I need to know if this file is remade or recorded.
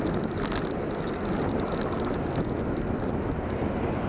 recorded